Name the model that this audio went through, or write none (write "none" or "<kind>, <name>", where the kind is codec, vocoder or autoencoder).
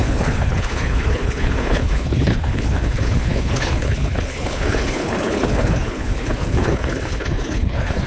codec, HILCodec